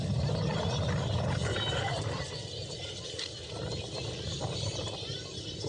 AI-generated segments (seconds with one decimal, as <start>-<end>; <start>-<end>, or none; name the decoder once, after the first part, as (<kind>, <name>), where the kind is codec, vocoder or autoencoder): none